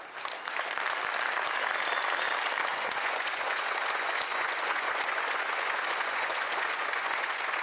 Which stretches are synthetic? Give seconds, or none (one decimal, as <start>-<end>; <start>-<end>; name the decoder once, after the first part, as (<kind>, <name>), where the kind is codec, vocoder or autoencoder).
2.7-7.6 (vocoder, Vocos)